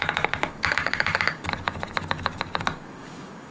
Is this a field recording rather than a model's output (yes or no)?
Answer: no